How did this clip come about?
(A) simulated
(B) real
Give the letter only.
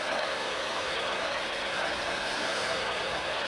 A